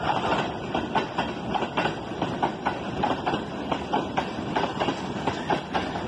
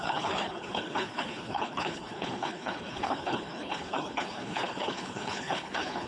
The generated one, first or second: second